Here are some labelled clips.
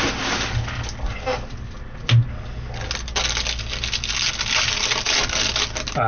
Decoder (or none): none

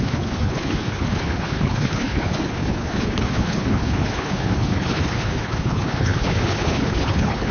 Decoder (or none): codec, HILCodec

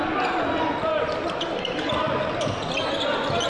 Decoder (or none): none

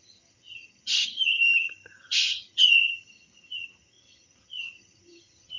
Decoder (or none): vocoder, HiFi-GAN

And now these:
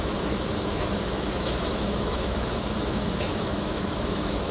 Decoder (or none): autoencoder, DAC-VAE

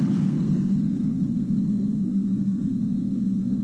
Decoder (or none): codec, SNAC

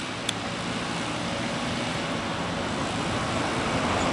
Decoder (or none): none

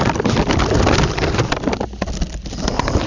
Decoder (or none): none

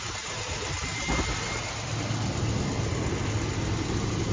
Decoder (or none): none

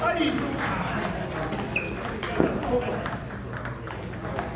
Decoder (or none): none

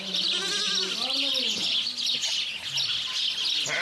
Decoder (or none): none